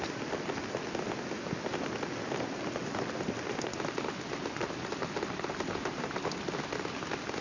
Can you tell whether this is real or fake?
real